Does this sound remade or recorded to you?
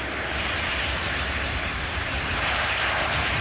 remade